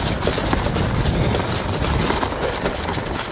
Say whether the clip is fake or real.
real